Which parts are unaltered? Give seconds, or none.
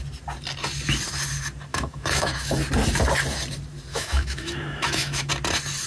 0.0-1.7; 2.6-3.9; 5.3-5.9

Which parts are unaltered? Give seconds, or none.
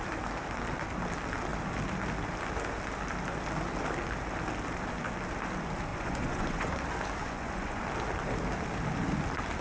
0.0-5.9; 6.7-7.2; 7.8-9.6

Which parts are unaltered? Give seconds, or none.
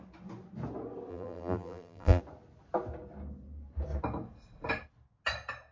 0.0-1.1; 2.2-5.7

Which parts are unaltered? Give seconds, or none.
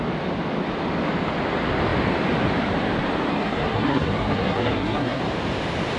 0.0-3.3; 5.2-6.0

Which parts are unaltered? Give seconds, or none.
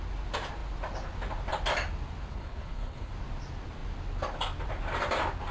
0.0-2.3; 3.1-5.5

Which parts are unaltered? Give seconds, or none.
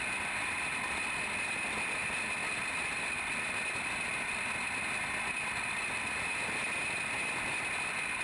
0.0-8.2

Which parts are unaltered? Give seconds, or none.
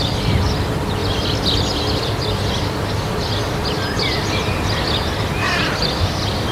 0.0-6.5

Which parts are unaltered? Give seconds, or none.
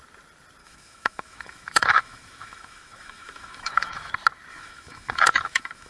0.0-0.6; 4.1-4.5